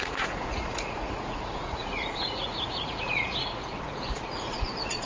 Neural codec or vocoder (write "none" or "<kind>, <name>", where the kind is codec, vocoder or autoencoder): vocoder, Vocos